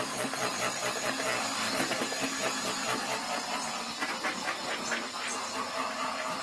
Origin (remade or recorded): recorded